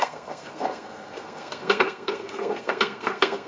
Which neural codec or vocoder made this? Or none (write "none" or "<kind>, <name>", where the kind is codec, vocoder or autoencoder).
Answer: codec, SNAC